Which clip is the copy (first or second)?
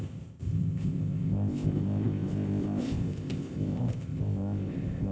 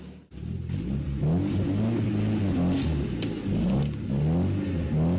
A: first